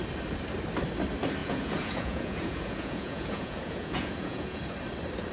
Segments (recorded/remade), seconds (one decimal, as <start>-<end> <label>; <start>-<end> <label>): 0.0-1.4 recorded; 1.4-4.6 remade; 4.6-5.3 recorded